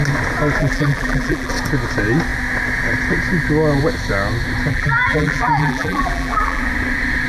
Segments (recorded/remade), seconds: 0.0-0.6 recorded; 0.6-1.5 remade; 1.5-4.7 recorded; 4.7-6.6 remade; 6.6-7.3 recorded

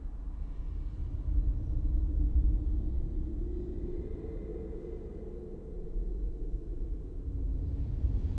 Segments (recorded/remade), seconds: 0.0-1.0 remade; 1.0-3.7 recorded; 3.7-4.5 remade; 4.5-6.1 recorded; 6.1-8.4 remade

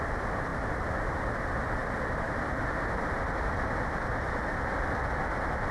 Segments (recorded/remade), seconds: 0.0-0.5 recorded; 0.5-1.3 remade; 1.3-5.7 recorded

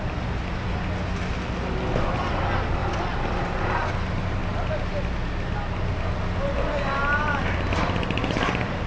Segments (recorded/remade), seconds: 0.0-8.9 recorded

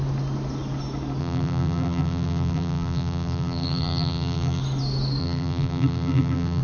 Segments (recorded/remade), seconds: 0.0-1.2 recorded; 1.2-4.6 remade; 4.6-5.2 recorded; 5.2-6.6 remade

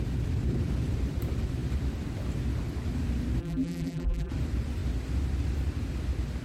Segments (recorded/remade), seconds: 0.0-3.4 recorded; 3.4-4.3 remade; 4.3-6.4 recorded

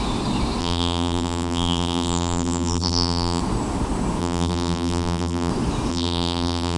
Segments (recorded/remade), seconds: 0.0-0.6 recorded; 0.6-3.4 remade; 3.4-4.2 recorded; 4.2-5.5 remade; 5.5-5.9 recorded; 5.9-6.8 remade